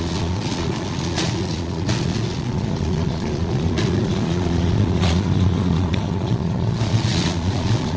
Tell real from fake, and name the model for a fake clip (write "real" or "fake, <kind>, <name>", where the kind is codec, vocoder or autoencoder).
fake, vocoder, Vocos